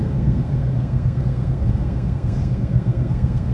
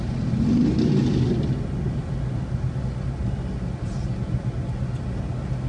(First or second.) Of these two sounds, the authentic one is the second